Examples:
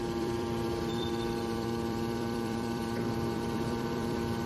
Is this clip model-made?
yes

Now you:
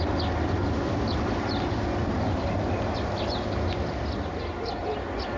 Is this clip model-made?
no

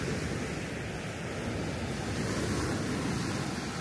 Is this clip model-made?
no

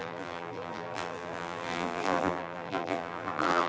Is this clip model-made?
yes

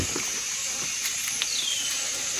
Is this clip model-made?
no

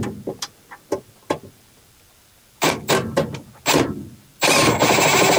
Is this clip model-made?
no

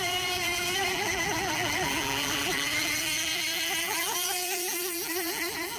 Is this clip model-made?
yes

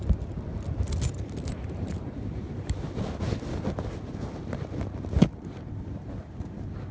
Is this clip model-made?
no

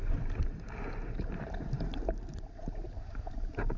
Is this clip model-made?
yes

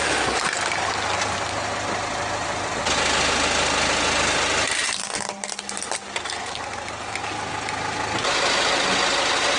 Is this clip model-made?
no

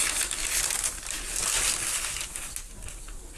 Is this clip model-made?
no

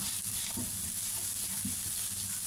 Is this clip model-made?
no